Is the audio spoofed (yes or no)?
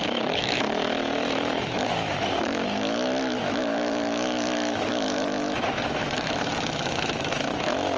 yes